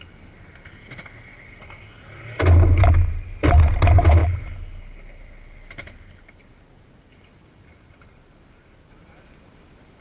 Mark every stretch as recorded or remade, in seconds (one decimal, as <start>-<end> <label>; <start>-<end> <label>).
0.0-10.0 recorded